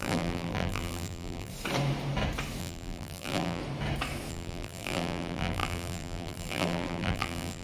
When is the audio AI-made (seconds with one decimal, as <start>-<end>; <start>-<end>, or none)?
0.0-1.5; 2.6-3.6; 4.3-7.6